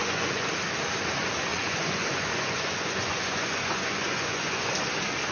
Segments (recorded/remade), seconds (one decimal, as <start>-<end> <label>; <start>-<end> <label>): 0.0-0.5 remade; 0.5-1.5 recorded; 1.5-4.7 remade; 4.7-5.3 recorded

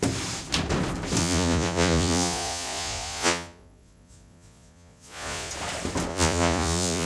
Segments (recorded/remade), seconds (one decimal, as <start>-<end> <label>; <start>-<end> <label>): 0.0-1.2 recorded; 1.2-5.5 remade; 5.5-6.1 recorded; 6.1-7.1 remade

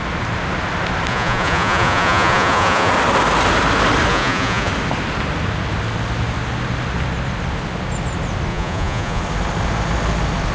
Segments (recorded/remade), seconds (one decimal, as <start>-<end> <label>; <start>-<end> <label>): 0.0-1.1 recorded; 1.1-2.9 remade; 2.9-4.1 recorded; 4.1-4.7 remade; 4.7-8.5 recorded; 8.5-9.2 remade; 9.2-10.5 recorded

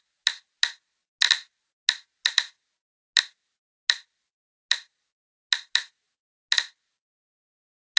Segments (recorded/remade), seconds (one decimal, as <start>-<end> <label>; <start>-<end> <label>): 0.0-8.0 recorded

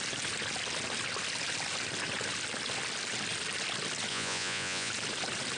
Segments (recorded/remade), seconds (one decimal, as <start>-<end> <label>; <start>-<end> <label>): 0.0-4.1 recorded; 4.1-4.9 remade; 4.9-5.6 recorded